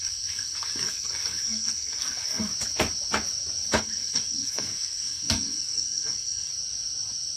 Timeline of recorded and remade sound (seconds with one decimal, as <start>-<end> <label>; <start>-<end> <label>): 0.0-2.5 remade; 2.5-3.8 recorded; 3.8-6.5 remade; 6.5-7.4 recorded